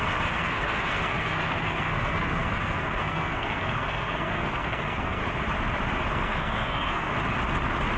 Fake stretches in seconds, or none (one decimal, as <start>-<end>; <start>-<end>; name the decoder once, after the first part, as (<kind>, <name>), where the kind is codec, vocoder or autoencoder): 0.0-5.2 (codec, SNAC); 6.1-7.1